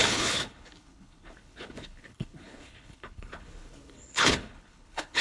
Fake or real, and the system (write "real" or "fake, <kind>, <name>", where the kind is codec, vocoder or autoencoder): fake, codec, HILCodec